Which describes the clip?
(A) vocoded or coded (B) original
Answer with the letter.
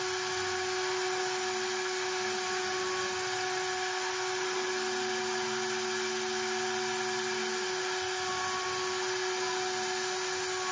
B